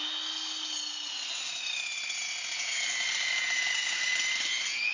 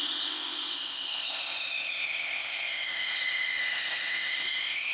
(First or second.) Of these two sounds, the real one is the first